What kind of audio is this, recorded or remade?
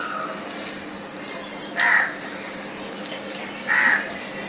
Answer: recorded